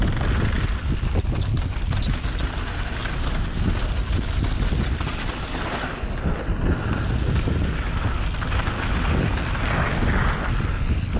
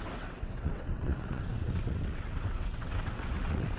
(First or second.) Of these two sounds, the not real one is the second